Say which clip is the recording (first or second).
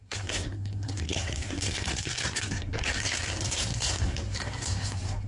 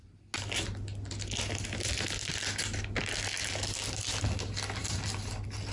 second